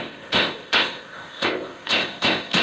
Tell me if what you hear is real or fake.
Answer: fake